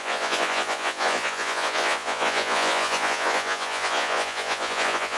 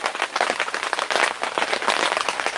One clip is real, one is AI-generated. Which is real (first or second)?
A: second